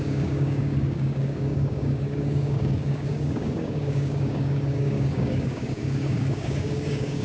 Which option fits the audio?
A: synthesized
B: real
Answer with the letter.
A